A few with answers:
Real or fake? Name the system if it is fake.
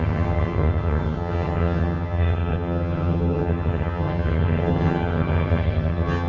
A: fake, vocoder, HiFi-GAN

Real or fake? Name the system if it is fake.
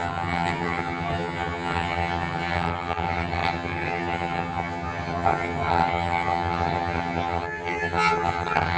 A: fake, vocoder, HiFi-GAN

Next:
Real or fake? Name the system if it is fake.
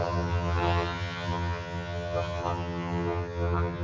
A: fake, vocoder, HiFi-GAN